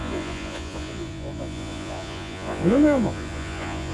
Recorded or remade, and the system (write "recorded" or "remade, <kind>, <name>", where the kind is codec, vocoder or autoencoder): remade, vocoder, Vocos